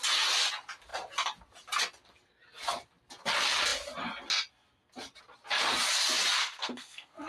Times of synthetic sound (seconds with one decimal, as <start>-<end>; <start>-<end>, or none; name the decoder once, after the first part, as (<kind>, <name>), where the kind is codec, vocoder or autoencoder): 6.4-7.3 (codec, SNAC)